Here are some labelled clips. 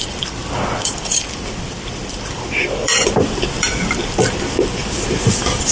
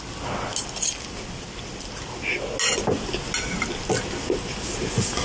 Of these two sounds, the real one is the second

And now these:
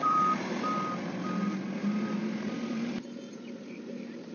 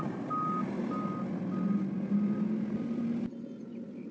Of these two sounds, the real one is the second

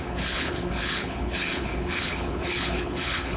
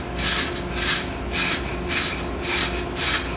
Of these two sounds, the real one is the second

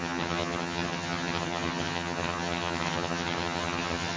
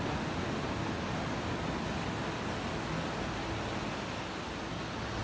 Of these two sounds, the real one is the second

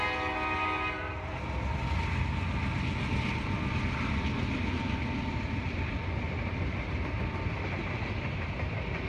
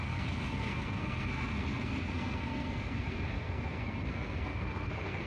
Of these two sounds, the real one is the first